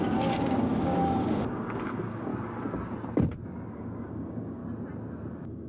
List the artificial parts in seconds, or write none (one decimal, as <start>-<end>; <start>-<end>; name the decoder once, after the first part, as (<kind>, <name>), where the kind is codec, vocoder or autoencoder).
0.0-2.3 (codec, DAC); 3.7-4.6; 5.3-5.7